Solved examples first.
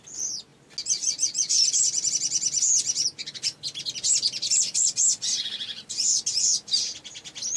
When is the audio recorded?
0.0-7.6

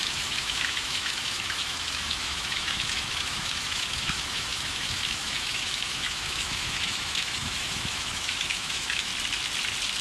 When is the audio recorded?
9.1-10.0

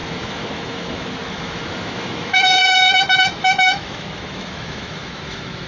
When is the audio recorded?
none